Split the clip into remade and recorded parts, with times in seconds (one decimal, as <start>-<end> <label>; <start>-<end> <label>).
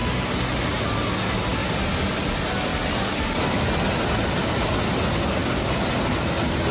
0.0-5.4 recorded; 5.4-5.9 remade; 5.9-6.7 recorded